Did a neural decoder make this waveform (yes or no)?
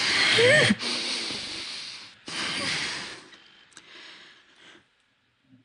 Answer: no